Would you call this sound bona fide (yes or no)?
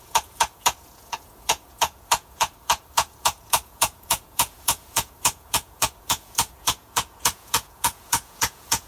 no